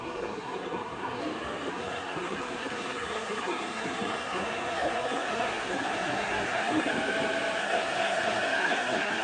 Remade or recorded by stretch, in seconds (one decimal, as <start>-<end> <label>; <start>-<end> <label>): 0.0-1.2 remade; 1.2-1.7 recorded; 1.7-6.9 remade; 6.9-7.6 recorded; 7.6-9.2 remade